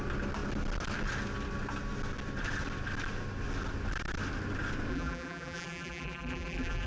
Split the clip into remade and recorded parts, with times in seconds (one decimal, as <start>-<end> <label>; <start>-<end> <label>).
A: 0.0-4.9 recorded; 4.9-6.9 remade

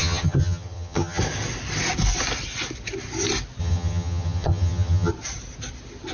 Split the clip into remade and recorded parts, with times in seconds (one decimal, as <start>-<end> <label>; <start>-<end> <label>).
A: 0.0-1.2 remade; 1.2-3.6 recorded; 3.6-5.1 remade; 5.1-6.1 recorded

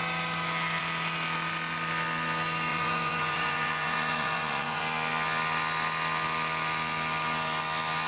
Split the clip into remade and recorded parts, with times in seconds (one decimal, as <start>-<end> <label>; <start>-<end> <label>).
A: 0.0-2.7 recorded; 2.7-4.8 remade; 4.8-8.1 recorded

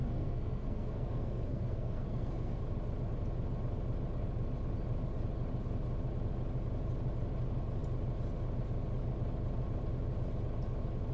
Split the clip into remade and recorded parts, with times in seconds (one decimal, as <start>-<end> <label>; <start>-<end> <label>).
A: 0.0-2.6 remade; 2.6-11.1 recorded